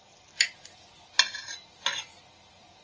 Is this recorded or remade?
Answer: recorded